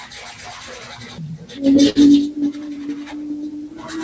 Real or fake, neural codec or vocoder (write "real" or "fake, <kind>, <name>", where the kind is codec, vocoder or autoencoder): real